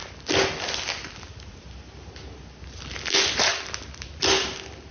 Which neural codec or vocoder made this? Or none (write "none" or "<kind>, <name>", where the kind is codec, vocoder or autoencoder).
none